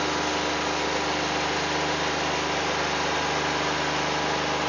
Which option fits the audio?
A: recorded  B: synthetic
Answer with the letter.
A